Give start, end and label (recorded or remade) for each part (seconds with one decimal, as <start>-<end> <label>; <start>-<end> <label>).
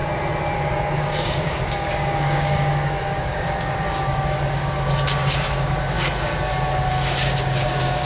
0.0-0.7 recorded; 0.7-6.3 remade; 6.3-6.9 recorded; 6.9-8.1 remade